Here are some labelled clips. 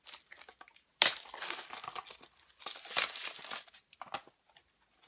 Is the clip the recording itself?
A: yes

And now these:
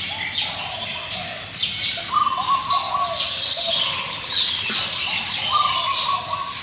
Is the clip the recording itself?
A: yes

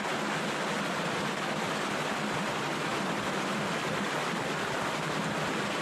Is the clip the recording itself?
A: yes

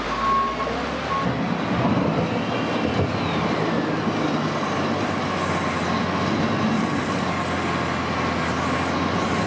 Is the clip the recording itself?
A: yes